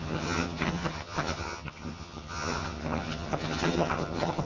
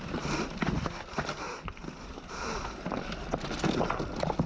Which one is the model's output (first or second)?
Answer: first